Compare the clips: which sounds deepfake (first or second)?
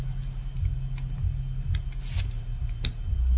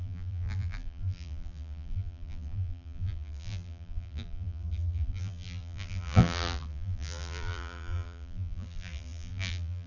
second